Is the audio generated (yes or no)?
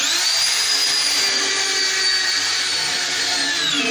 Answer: yes